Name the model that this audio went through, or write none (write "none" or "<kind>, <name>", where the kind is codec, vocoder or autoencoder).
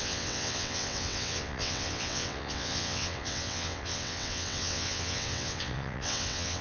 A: vocoder, WaveNeXt